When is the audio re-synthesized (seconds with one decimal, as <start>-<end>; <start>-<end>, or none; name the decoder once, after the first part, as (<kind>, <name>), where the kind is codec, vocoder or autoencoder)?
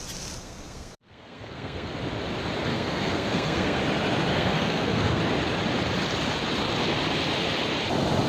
0.4-1.9 (codec, SNAC); 2.7-3.8; 4.3-5.2